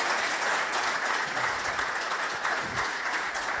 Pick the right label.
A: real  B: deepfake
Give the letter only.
B